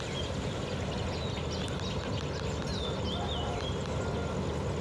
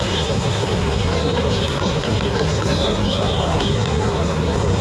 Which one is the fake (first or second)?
second